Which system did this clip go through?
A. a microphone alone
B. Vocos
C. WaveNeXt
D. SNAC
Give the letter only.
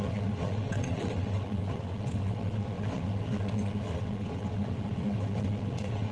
C